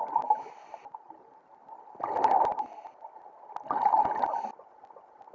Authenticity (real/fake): real